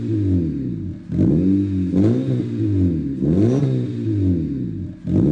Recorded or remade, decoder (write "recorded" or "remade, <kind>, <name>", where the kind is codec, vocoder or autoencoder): recorded